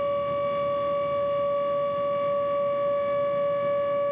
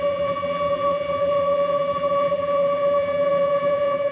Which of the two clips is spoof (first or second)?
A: second